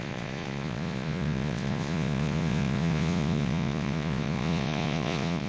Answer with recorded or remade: remade